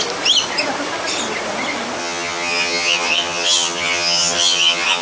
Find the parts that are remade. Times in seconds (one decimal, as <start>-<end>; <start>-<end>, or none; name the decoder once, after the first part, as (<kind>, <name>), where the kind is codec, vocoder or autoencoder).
2.0-5.0 (vocoder, HiFi-GAN)